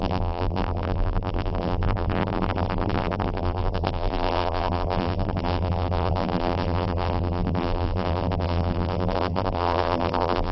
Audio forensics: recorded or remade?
remade